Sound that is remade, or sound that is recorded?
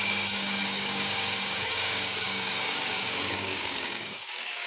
remade